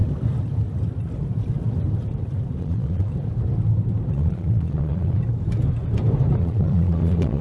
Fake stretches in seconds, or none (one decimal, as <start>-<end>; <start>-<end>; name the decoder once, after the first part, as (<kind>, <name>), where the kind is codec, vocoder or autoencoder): 2.6-3.1 (vocoder, Vocos); 4.1-5.2; 6.4-7.4